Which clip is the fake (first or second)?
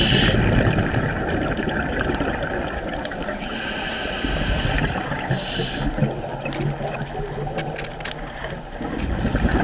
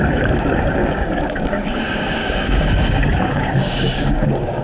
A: second